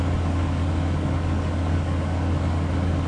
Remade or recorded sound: remade